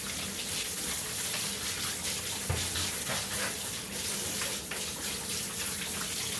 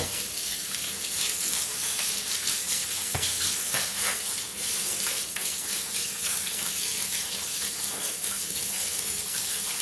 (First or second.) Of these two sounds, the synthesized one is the second